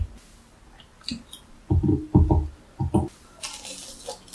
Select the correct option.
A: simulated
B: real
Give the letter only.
B